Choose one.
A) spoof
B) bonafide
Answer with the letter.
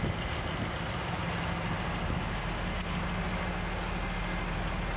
B